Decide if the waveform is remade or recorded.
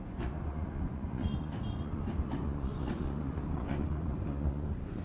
remade